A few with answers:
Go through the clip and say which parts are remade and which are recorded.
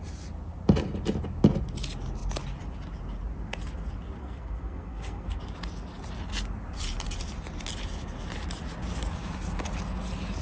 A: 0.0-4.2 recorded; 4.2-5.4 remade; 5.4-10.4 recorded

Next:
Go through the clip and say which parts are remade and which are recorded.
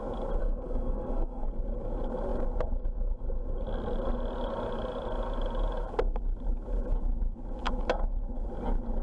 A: 0.0-0.4 recorded; 0.4-1.5 remade; 1.5-9.0 recorded